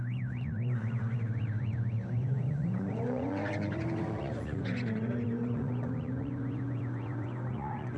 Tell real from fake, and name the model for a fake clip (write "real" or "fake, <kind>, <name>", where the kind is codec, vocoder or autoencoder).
fake, vocoder, Vocos